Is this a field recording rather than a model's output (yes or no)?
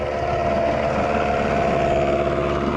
yes